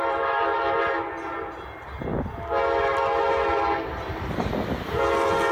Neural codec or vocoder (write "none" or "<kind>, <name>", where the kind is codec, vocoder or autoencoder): none